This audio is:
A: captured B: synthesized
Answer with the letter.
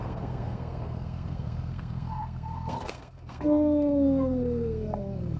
B